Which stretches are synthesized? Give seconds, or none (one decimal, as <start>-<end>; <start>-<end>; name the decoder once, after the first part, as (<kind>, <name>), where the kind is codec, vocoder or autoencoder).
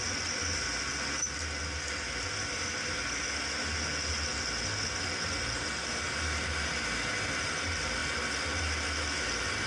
none